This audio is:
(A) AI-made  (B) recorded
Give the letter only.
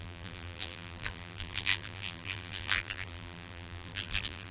A